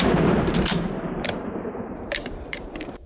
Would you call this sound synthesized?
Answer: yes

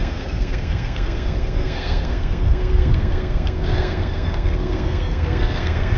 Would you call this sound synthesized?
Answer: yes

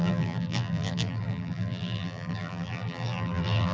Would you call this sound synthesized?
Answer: yes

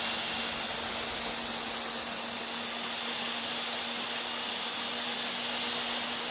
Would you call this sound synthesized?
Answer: no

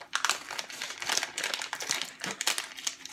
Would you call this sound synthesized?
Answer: no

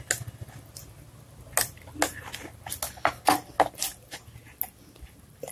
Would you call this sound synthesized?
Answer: no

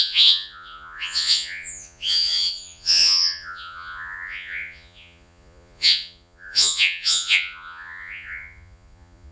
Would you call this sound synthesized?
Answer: yes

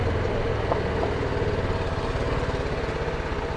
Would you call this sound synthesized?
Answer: no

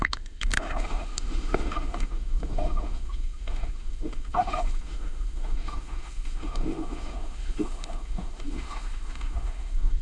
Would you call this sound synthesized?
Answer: yes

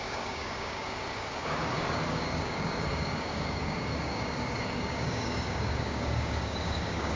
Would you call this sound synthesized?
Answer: yes